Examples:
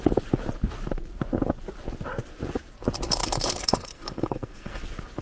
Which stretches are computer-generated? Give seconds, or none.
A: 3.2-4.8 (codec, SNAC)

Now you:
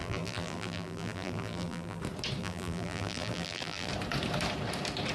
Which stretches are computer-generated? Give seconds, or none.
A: 0.0-2.0 (vocoder, BigVGAN v2); 2.4-3.9

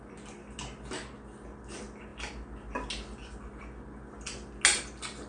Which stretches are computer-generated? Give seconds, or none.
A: none

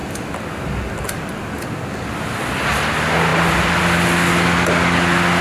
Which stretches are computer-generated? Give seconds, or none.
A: none

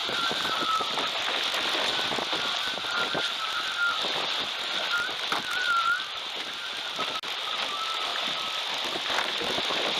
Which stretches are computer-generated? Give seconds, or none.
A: 0.0-0.6 (vocoder, BigVGAN v2)

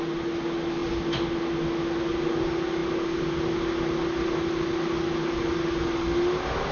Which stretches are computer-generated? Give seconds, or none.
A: none

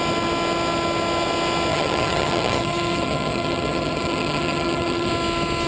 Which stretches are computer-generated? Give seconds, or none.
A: 1.7-5.1 (vocoder, HiFi-GAN)